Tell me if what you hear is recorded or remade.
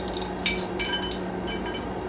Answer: recorded